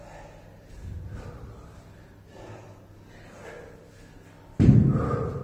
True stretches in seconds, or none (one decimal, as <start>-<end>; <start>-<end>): 0.0-5.4